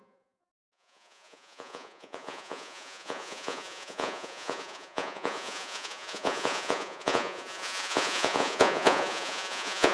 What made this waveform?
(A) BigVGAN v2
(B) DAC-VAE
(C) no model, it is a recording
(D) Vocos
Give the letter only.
D